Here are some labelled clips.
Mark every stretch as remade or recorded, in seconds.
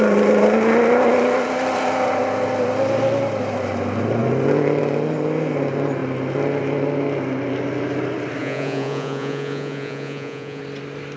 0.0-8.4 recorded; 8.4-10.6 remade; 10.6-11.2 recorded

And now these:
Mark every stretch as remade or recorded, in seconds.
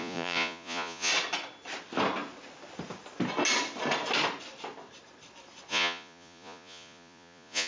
0.0-1.1 remade; 1.1-5.7 recorded; 5.7-7.7 remade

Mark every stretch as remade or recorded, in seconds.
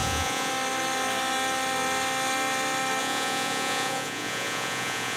0.0-0.5 remade; 0.5-3.0 recorded; 3.0-5.2 remade